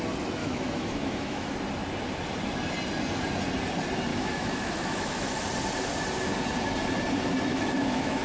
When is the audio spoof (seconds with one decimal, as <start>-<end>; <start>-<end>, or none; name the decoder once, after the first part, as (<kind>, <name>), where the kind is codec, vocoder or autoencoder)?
0.4-1.5 (autoencoder, DAC-VAE); 4.1-5.4; 7.5-8.2